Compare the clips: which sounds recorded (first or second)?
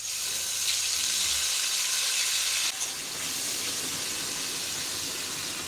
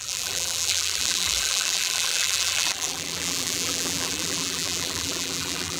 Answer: first